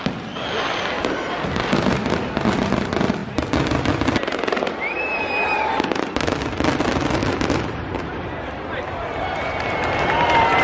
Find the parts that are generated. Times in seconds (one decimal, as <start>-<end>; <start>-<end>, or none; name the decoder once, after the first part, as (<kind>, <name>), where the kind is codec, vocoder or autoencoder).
none